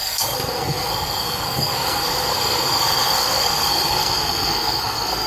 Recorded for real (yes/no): no